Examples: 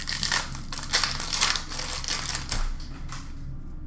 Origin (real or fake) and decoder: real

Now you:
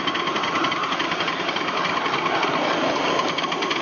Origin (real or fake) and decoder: real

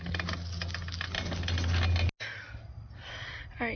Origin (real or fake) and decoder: real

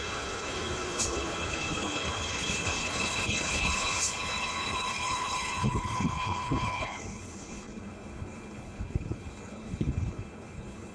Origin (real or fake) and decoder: fake, codec, HILCodec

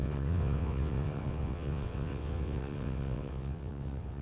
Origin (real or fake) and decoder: fake, vocoder, WaveNeXt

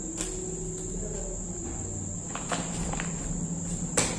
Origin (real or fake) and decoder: real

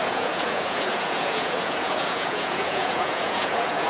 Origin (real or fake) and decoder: fake, vocoder, Vocos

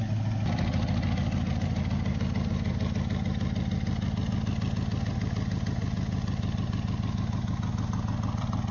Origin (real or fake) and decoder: real